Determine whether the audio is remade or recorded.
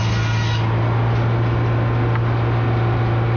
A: recorded